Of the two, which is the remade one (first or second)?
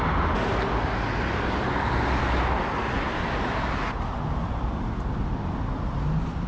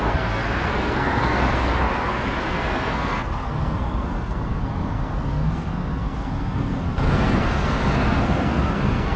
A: second